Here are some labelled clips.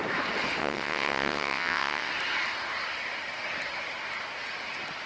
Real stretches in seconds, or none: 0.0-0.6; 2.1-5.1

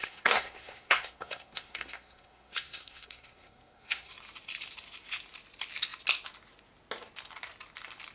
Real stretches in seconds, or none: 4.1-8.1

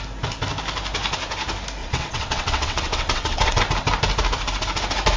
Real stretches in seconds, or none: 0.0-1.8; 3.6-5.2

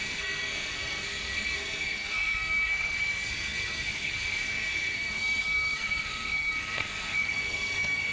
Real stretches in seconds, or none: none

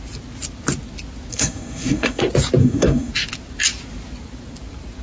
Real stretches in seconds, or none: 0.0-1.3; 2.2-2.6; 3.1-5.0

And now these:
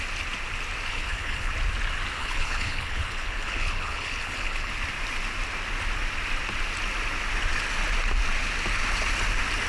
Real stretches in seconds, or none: 0.0-0.9; 1.5-2.2; 4.7-9.7

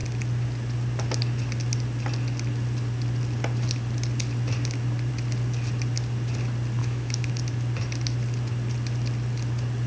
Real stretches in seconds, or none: 0.0-6.8; 7.3-9.9

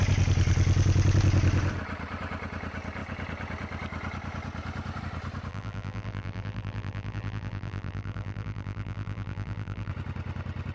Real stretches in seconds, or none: 0.0-5.5; 9.9-10.7